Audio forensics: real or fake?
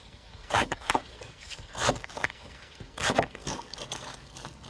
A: fake